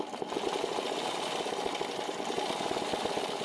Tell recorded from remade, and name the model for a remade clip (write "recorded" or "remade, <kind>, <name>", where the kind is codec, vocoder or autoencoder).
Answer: recorded